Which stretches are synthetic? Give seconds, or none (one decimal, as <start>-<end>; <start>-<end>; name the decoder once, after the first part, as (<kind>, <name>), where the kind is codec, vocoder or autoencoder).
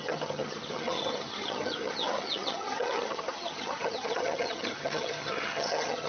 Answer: 0.0-6.1 (vocoder, HiFi-GAN)